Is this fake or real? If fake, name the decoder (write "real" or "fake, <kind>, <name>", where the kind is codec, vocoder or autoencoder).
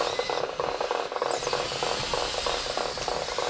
fake, vocoder, BigVGAN v2